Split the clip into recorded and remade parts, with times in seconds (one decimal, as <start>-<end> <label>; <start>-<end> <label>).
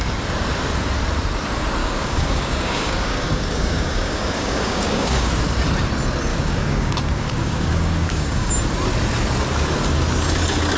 0.0-1.8 recorded; 1.8-5.3 remade; 5.3-6.3 recorded; 6.3-8.5 remade; 8.5-10.8 recorded